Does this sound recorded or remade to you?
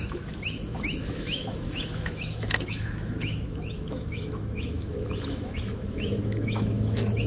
remade